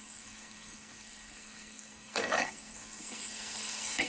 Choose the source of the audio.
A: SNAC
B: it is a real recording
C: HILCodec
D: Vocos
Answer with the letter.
A